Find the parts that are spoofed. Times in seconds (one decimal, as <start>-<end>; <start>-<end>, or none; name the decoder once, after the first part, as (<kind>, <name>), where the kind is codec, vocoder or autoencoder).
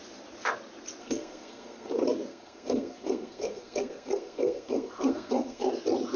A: 1.0-1.9 (codec, SNAC); 2.3-5.7